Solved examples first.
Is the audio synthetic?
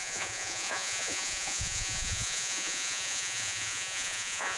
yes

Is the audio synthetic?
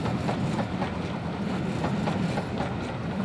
no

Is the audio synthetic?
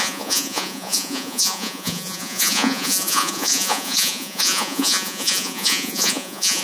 yes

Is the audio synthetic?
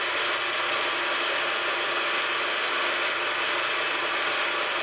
no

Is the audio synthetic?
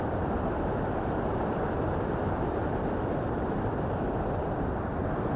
no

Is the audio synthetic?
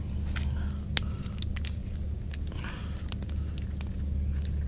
no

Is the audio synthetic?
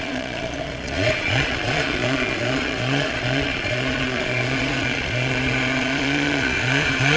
yes